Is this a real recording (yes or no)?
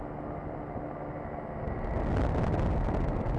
yes